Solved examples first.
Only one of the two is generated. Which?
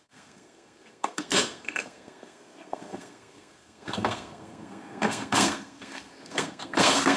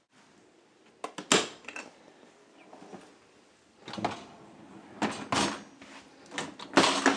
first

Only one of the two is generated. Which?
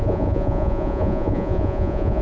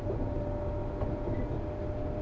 first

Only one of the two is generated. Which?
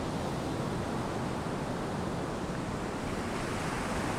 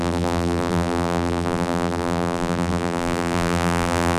second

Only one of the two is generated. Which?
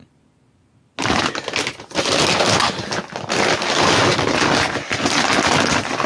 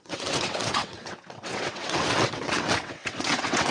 second